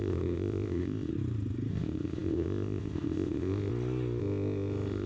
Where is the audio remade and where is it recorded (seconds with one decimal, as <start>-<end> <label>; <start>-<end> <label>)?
0.0-1.1 remade; 1.1-1.7 recorded; 1.7-3.7 remade; 3.7-4.2 recorded; 4.2-5.1 remade